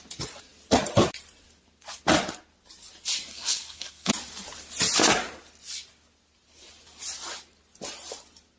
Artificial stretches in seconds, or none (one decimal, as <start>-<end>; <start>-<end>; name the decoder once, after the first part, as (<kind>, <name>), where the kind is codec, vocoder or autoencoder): 3.3-4.1 (codec, SNAC)